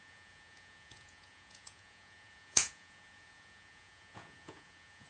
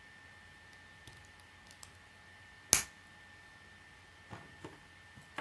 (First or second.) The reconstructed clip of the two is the first